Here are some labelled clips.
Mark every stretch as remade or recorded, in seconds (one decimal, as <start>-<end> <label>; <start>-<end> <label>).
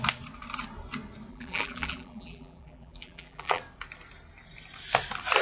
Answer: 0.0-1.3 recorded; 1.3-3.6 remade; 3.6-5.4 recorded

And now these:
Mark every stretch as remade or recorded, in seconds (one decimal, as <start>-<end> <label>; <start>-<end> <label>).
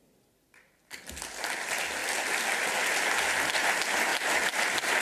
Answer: 0.0-2.0 recorded; 2.0-2.7 remade; 2.7-4.1 recorded; 4.1-4.6 remade; 4.6-5.0 recorded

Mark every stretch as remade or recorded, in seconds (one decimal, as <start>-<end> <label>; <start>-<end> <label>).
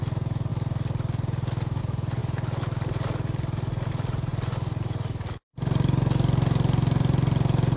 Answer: 0.0-7.8 recorded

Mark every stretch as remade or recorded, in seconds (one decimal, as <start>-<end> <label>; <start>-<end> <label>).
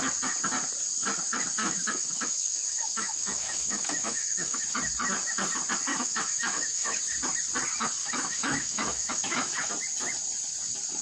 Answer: 0.0-1.6 recorded; 1.6-4.6 remade; 4.6-5.9 recorded; 5.9-7.0 remade; 7.0-8.0 recorded; 8.0-9.7 remade; 9.7-11.0 recorded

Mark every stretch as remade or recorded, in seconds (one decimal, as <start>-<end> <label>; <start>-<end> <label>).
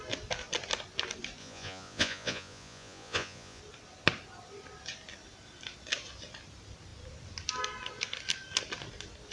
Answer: 0.0-1.4 recorded; 1.4-3.6 remade; 3.6-9.3 recorded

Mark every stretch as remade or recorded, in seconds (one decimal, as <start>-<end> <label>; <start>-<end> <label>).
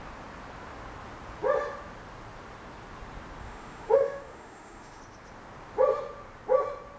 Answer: 0.0-3.4 recorded; 3.4-5.0 remade; 5.0-7.0 recorded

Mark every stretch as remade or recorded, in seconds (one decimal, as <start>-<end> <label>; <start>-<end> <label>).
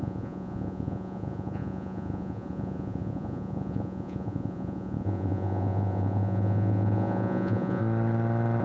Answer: 0.0-7.8 remade; 7.8-8.6 recorded